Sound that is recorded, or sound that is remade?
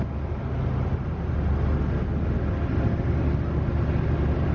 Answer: recorded